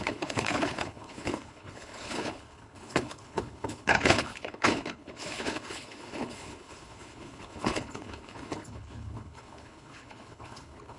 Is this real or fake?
fake